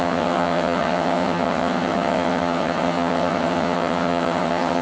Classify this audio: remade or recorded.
remade